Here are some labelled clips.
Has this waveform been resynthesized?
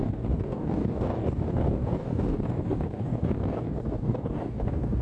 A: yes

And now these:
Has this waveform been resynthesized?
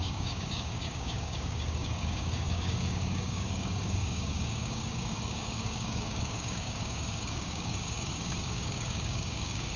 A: yes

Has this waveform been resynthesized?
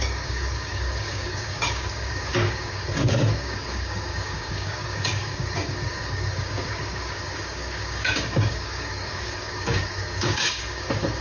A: yes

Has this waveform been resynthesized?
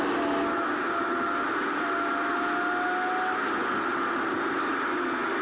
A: no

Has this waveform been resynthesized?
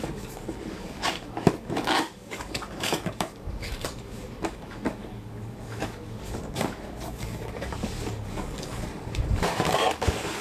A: yes